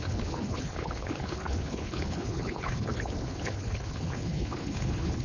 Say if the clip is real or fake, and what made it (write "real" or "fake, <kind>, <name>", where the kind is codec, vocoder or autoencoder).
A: fake, codec, HILCodec